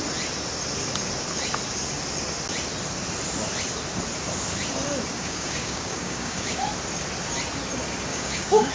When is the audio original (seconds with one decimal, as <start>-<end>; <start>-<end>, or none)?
0.0-5.1; 6.6-8.1